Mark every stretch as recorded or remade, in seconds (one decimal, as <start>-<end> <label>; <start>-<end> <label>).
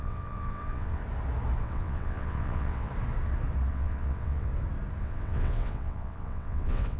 0.0-1.0 remade; 1.0-1.6 recorded; 1.6-2.9 remade; 2.9-3.7 recorded; 3.7-4.5 remade; 4.5-5.0 recorded; 5.0-7.0 remade